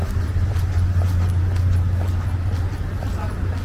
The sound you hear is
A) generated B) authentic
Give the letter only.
B